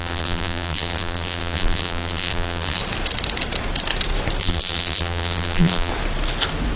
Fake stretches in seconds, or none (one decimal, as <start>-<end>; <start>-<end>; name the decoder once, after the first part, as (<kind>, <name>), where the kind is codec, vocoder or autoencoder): 0.0-2.8 (vocoder, BigVGAN v2); 4.4-5.9